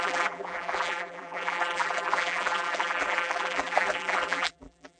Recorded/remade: remade